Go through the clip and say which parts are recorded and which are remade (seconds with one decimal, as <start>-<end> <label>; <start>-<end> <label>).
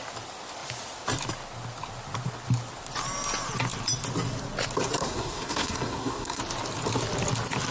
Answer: 0.0-5.0 recorded; 5.0-6.4 remade; 6.4-7.7 recorded